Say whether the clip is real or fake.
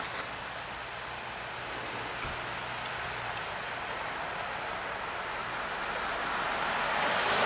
real